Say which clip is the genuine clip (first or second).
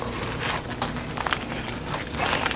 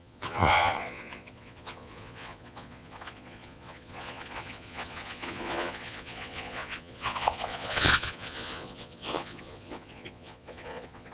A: first